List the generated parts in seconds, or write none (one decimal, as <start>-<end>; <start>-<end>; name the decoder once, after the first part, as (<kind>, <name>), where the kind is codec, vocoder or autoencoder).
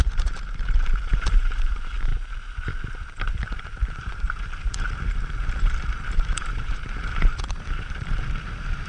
0.0-2.1 (vocoder, BigVGAN v2); 3.3-8.9